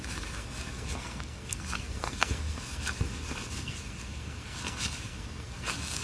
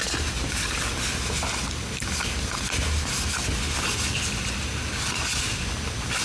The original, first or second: second